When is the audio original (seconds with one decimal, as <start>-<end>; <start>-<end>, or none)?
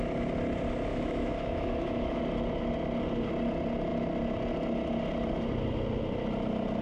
0.0-0.9; 2.2-6.8